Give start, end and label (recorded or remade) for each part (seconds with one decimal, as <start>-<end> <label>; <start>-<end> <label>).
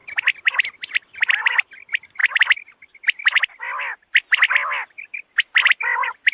0.0-6.3 recorded